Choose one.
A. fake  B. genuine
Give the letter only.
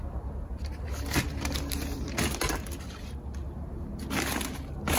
B